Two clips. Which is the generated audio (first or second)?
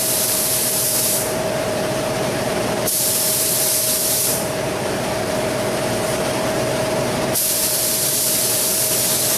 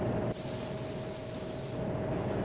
first